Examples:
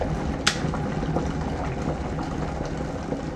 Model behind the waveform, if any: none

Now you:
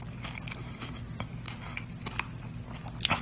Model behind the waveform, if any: none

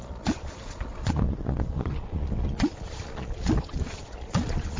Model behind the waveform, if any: vocoder, Vocos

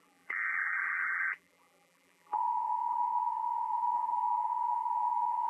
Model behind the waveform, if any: vocoder, BigVGAN v2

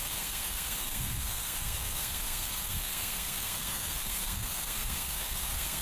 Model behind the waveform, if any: codec, SNAC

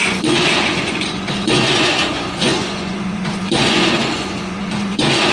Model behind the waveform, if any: vocoder, Vocos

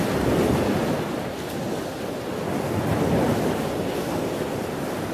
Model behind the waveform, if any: none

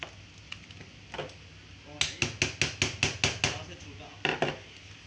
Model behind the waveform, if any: none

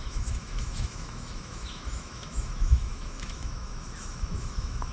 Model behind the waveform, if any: autoencoder, DAC-VAE